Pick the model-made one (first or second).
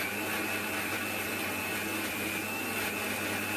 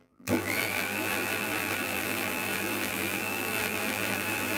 second